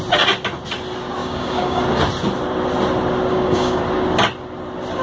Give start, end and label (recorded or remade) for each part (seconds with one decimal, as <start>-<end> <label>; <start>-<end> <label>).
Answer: 0.0-1.2 recorded; 1.2-1.8 remade; 1.8-3.3 recorded; 3.3-3.8 remade; 3.8-5.0 recorded